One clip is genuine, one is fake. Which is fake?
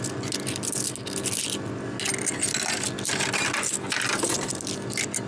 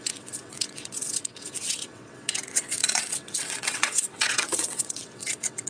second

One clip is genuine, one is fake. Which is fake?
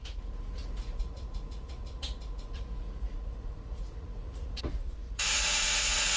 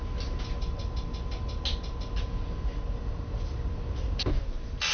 first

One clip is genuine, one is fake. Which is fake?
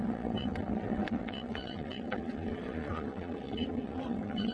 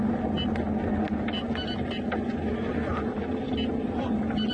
first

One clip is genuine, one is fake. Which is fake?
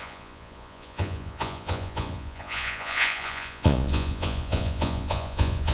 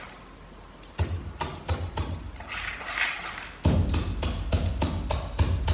first